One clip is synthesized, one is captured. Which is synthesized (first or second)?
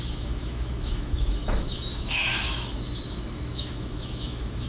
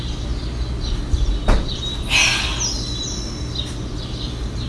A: first